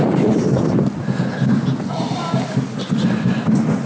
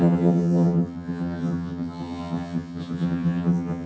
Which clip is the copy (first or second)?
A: second